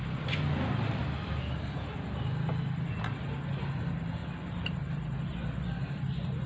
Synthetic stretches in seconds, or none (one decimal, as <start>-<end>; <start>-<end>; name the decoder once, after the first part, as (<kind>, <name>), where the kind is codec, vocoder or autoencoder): 4.2-6.0 (vocoder, BigVGAN v2)